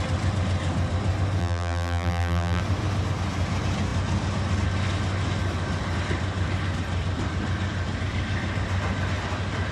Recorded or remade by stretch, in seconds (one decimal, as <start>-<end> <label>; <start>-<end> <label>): 0.0-1.4 recorded; 1.4-2.6 remade; 2.6-9.7 recorded